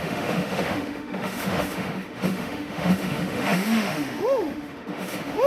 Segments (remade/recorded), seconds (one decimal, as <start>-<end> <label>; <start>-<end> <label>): 0.0-5.5 remade